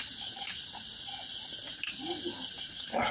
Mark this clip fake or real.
real